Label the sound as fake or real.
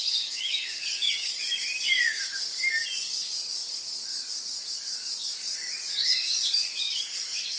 fake